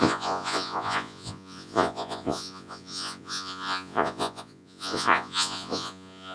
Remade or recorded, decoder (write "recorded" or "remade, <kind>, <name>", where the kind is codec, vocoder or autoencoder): remade, vocoder, Vocos